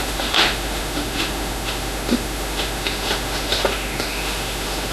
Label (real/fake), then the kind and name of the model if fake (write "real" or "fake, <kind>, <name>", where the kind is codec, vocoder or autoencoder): fake, autoencoder, DAC-VAE